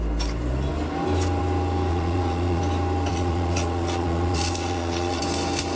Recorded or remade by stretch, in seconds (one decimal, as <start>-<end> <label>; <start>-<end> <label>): 0.0-1.9 recorded; 1.9-2.6 remade; 2.6-3.1 recorded; 3.1-5.2 remade; 5.2-5.8 recorded